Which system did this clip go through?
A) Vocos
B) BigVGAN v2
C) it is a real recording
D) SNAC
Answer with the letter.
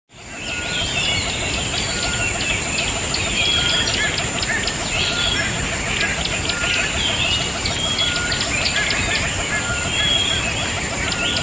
C